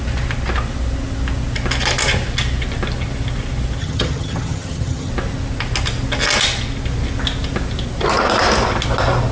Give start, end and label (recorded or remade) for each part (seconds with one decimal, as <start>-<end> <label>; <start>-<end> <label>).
0.0-3.8 recorded; 3.8-5.1 remade; 5.1-9.3 recorded

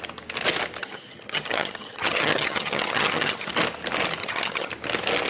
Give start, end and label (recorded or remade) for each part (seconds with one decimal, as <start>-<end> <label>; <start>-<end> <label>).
0.0-0.8 recorded; 0.8-3.5 remade; 3.5-4.2 recorded; 4.2-4.7 remade; 4.7-5.3 recorded

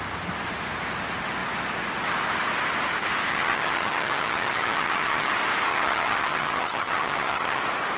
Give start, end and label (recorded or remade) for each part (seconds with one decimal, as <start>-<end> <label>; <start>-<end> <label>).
0.0-3.3 recorded; 3.3-5.3 remade; 5.3-5.7 recorded; 5.7-7.6 remade; 7.6-8.0 recorded

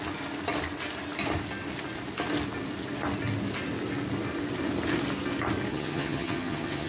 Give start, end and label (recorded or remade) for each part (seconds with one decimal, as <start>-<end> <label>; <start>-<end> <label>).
0.0-5.7 recorded; 5.7-6.9 remade

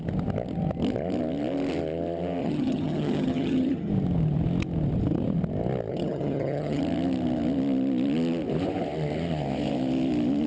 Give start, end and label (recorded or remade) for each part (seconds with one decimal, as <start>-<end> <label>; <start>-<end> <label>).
0.0-2.4 recorded; 2.4-3.9 remade; 3.9-5.9 recorded; 5.9-6.8 remade; 6.8-10.5 recorded

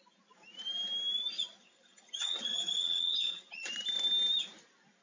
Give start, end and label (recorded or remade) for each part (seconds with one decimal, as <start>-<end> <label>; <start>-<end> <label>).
0.0-1.6 recorded; 1.6-3.6 remade; 3.6-5.0 recorded